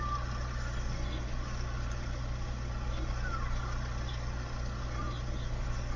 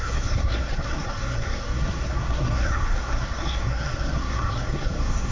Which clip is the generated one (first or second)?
second